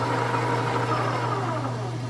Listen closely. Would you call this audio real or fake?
real